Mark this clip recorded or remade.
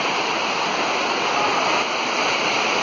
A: recorded